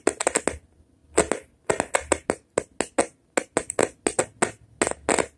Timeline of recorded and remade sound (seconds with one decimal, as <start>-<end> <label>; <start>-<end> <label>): 0.0-5.4 recorded